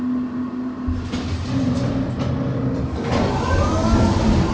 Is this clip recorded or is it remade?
recorded